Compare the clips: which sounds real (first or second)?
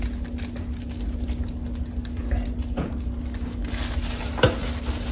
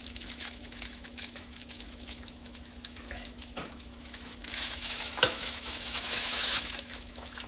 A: first